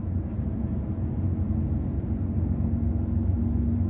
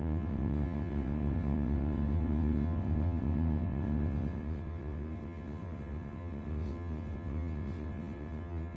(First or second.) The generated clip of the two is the second